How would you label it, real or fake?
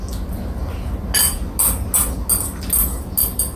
real